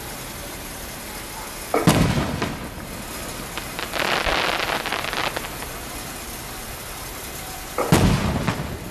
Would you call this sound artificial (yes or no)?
no